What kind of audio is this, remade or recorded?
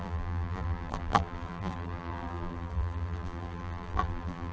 remade